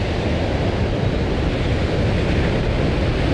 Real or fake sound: real